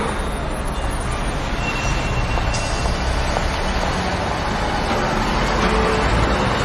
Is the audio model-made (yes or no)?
no